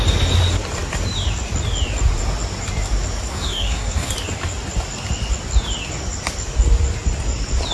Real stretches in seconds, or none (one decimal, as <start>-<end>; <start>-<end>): 0.0-3.3; 4.1-7.7